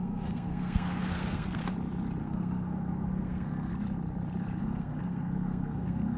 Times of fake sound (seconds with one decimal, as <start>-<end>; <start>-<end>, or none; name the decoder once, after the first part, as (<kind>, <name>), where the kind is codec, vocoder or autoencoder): 0.0-1.6 (codec, SNAC); 2.2-3.7; 4.6-6.2